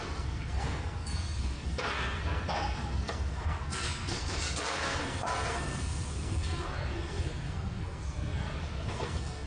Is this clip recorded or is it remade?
remade